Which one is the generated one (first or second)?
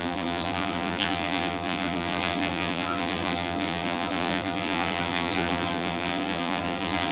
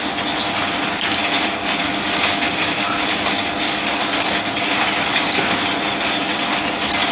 first